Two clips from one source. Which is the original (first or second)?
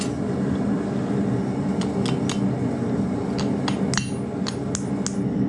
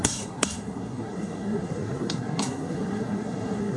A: first